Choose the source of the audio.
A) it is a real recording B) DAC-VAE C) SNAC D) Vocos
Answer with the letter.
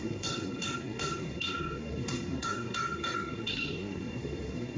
C